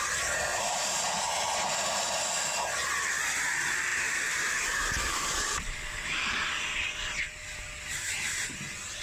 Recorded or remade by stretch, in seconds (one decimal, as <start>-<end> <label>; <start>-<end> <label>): 0.0-0.5 recorded; 0.5-1.3 remade; 1.3-3.9 recorded; 3.9-6.3 remade; 6.3-9.0 recorded